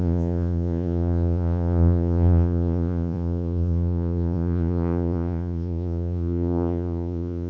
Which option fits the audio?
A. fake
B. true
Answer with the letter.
A